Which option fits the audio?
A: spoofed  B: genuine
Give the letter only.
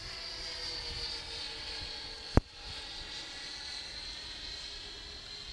B